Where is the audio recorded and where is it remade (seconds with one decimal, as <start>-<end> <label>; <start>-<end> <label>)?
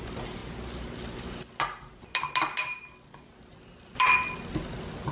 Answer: 0.0-5.1 recorded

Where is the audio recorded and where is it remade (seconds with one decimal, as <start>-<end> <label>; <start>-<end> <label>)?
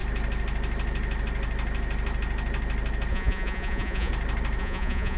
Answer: 0.0-3.1 recorded; 3.1-4.1 remade; 4.1-4.6 recorded; 4.6-5.2 remade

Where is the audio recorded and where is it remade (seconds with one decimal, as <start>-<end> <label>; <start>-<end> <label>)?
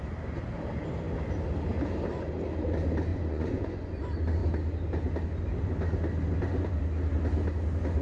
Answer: 0.0-3.1 recorded; 3.1-3.9 remade; 3.9-8.0 recorded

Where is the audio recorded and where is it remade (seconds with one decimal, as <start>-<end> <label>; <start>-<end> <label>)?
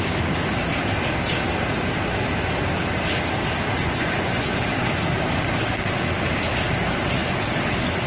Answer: 0.0-3.8 recorded; 3.8-4.6 remade; 4.6-8.1 recorded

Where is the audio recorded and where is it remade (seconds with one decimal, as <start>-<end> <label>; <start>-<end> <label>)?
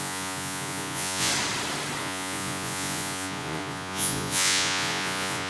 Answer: 0.0-1.3 remade; 1.3-2.0 recorded; 2.0-5.5 remade